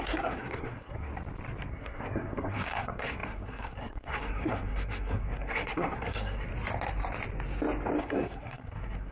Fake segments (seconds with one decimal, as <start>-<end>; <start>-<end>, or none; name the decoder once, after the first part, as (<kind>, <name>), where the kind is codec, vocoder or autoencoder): 0.0-1.1 (codec, SNAC); 1.7-6.5; 8.0-9.1